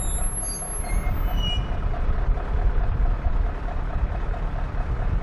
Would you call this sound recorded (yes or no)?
yes